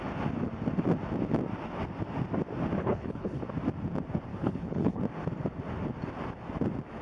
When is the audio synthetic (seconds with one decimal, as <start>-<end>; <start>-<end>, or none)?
2.8-3.4; 4.3-5.0